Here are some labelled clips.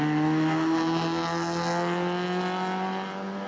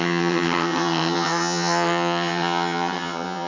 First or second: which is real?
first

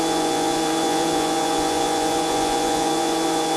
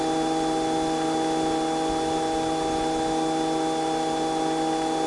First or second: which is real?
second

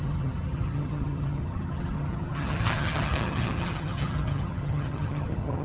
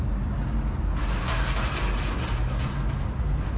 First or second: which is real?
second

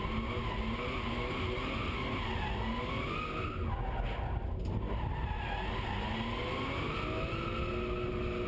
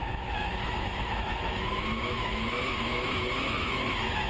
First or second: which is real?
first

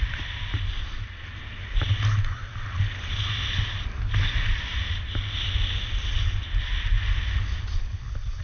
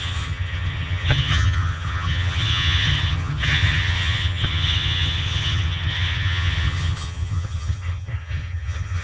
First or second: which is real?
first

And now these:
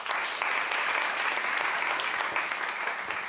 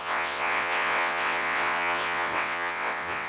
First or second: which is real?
first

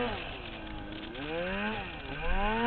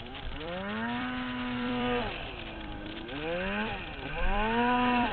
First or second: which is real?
first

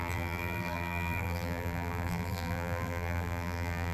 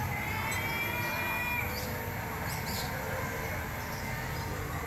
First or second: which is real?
second